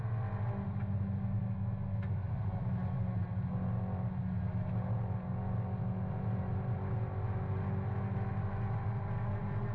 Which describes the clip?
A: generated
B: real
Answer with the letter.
B